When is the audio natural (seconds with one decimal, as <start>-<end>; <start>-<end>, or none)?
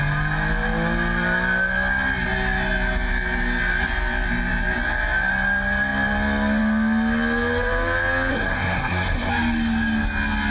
0.0-8.3; 9.3-10.5